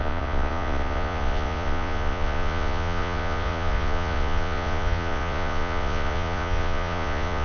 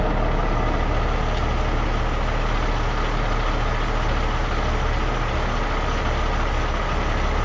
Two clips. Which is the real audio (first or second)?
second